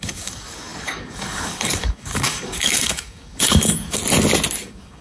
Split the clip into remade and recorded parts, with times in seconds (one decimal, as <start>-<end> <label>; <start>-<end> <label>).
0.0-4.0 remade; 4.0-4.6 recorded; 4.6-5.0 remade